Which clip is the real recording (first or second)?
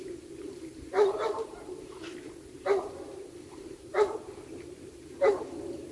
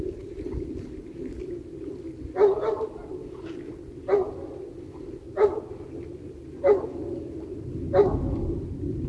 second